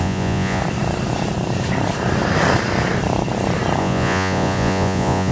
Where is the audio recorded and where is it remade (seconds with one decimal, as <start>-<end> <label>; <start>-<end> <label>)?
0.0-0.6 remade; 0.6-3.8 recorded; 3.8-5.3 remade